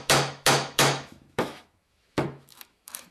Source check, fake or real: fake